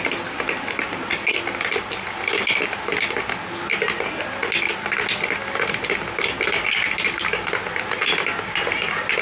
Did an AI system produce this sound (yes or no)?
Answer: no